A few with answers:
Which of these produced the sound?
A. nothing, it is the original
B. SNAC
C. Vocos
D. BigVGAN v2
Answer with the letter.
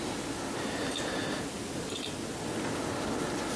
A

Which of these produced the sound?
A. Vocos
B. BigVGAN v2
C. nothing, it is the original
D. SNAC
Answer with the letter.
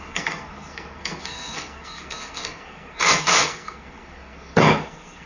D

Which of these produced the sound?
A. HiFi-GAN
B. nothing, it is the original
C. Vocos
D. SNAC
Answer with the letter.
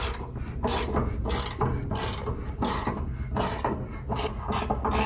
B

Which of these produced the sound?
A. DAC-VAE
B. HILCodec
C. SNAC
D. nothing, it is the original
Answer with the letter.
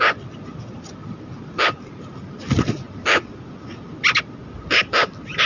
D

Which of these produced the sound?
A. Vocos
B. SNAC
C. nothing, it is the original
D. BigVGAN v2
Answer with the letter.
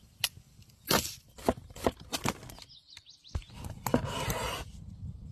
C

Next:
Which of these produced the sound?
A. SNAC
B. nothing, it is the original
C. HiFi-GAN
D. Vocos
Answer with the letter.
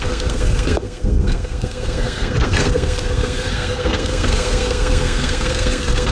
A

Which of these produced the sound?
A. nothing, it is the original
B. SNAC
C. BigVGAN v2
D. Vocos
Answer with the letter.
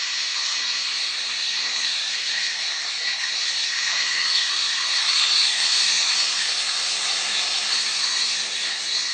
B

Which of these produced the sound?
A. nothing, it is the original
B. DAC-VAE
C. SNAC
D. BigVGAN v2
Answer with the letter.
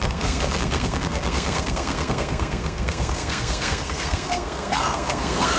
C